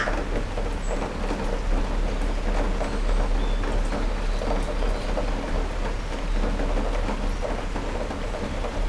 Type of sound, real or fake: real